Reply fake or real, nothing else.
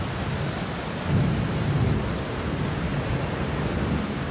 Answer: real